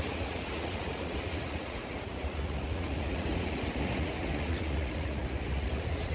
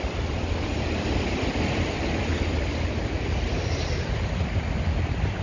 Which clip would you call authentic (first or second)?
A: second